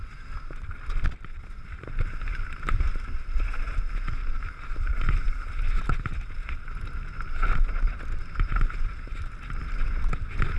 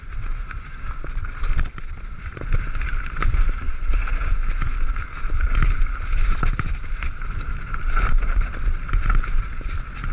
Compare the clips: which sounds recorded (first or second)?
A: first